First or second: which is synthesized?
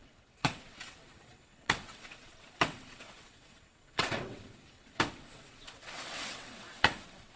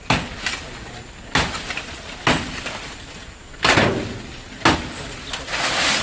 first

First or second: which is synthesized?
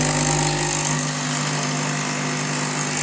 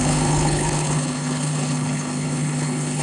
second